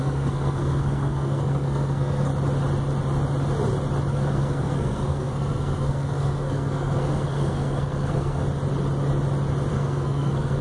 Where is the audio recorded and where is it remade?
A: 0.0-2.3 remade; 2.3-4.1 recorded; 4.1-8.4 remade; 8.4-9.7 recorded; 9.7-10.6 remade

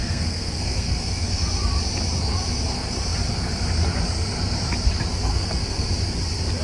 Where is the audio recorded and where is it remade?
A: 0.0-1.4 remade; 1.4-5.3 recorded; 5.3-5.9 remade; 5.9-6.6 recorded

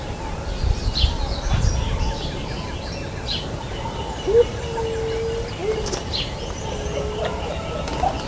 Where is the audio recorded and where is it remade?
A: 0.0-8.3 recorded

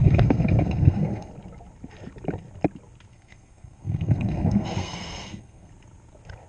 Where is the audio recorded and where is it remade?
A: 0.0-1.3 remade; 1.3-3.1 recorded; 3.1-5.7 remade; 5.7-6.5 recorded